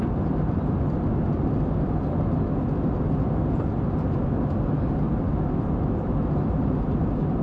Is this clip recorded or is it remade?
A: recorded